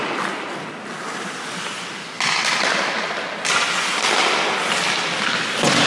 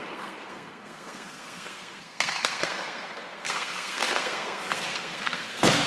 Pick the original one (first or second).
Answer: first